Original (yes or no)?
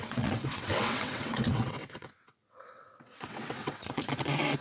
no